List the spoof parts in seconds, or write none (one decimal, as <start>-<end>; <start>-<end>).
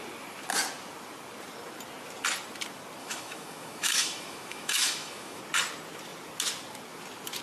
3.0-5.4